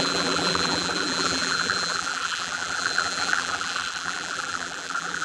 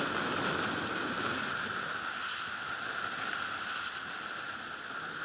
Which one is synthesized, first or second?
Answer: first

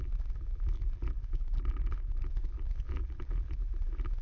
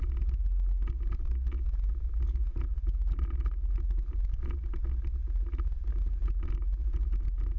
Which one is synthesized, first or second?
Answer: first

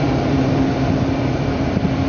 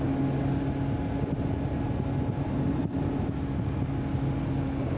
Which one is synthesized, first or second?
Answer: first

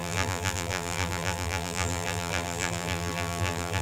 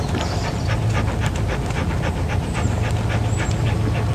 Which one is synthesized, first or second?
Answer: first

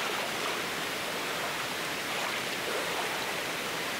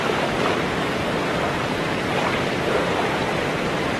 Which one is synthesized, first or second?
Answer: second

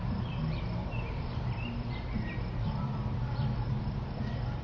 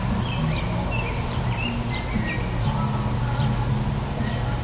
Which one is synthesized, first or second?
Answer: first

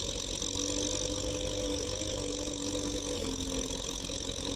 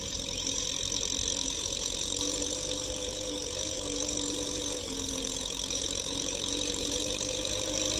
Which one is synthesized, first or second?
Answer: second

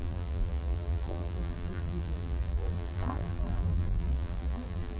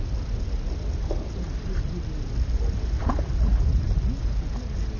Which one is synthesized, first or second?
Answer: first